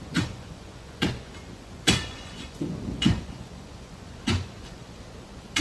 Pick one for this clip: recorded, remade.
remade